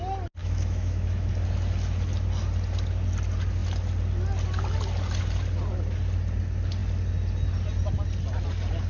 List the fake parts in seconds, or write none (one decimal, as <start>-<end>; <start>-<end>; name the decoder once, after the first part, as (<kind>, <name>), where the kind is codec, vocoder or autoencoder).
0.4-1.3 (autoencoder, DAC-VAE)